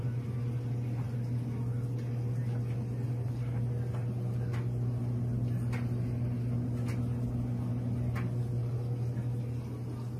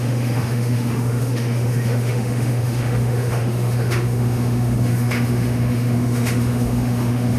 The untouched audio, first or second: first